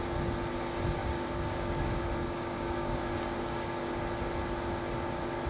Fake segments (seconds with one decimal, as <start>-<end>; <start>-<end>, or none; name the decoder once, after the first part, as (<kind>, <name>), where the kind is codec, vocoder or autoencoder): 1.0-4.0 (codec, DAC)